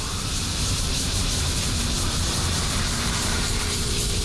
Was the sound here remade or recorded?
remade